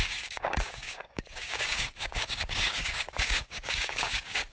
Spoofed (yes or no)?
yes